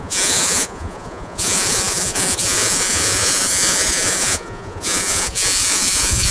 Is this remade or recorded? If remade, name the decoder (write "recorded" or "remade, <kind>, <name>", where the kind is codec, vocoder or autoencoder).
remade, vocoder, Vocos